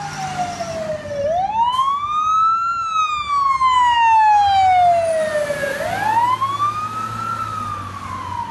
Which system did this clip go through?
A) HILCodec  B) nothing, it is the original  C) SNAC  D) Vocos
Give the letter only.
B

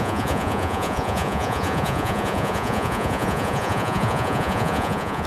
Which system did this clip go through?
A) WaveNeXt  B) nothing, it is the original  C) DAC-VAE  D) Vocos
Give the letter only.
D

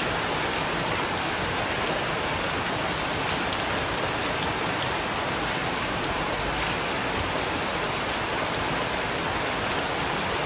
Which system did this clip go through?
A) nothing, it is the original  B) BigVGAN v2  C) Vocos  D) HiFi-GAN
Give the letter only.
A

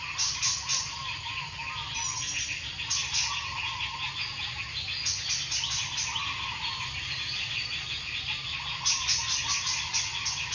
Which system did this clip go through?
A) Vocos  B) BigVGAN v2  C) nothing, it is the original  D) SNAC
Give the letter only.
C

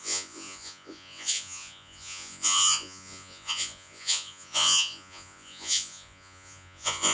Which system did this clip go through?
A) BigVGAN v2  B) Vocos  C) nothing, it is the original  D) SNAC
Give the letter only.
B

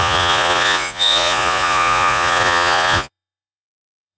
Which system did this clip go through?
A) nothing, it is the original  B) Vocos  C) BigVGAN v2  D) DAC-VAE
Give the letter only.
B